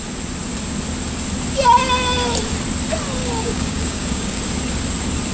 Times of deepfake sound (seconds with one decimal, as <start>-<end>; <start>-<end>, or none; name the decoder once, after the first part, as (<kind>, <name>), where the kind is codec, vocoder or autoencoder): 3.2-4.4 (codec, DAC)